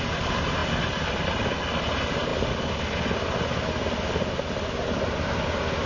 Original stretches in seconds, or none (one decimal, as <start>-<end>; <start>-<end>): 0.0-5.9